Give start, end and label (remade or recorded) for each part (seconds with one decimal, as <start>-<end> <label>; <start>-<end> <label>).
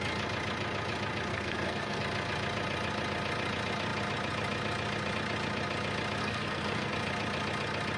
0.0-1.3 recorded; 1.3-2.0 remade; 2.0-6.2 recorded; 6.2-6.9 remade; 6.9-8.0 recorded